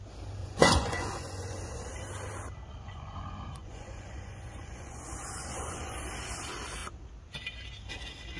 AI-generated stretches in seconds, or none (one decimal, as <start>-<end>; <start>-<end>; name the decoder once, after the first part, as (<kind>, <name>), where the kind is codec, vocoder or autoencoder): 0.4-1.9 (vocoder, Vocos); 2.8-6.0